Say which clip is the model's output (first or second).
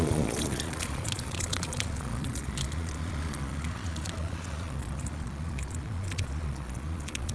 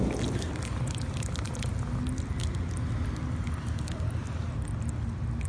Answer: first